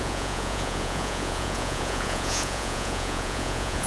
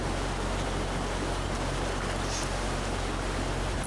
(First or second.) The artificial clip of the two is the first